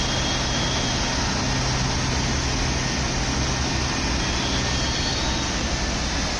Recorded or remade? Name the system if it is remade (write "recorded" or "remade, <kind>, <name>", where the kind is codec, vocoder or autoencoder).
recorded